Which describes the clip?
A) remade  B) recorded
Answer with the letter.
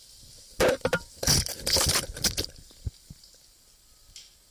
B